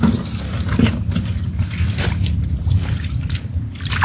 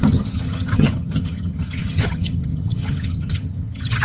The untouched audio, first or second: first